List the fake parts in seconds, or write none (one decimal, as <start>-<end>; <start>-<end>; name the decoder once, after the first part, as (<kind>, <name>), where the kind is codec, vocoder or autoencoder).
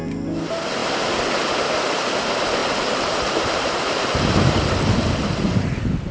2.6-4.6 (vocoder, BigVGAN v2)